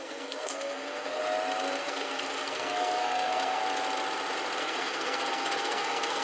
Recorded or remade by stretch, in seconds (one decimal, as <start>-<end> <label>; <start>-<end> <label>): 0.0-1.2 remade; 1.2-1.8 recorded; 1.8-3.6 remade; 3.6-4.6 recorded; 4.6-6.2 remade